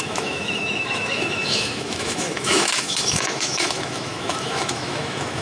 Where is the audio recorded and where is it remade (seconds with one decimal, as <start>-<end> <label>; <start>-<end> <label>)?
0.0-5.4 remade